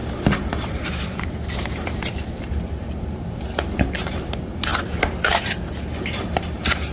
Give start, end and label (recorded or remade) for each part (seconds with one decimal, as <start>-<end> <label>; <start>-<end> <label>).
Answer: 0.0-4.7 remade; 4.7-6.1 recorded; 6.1-6.9 remade